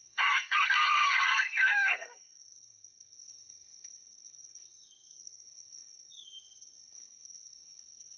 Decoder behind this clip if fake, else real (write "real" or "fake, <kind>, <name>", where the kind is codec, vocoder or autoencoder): fake, codec, SNAC